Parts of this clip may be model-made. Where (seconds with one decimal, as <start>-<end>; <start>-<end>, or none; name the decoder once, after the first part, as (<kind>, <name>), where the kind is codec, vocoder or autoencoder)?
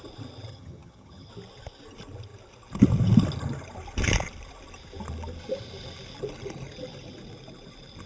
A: 0.5-1.3 (vocoder, HiFi-GAN)